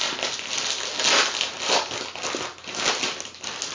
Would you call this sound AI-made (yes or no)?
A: no